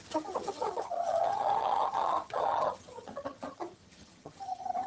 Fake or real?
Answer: fake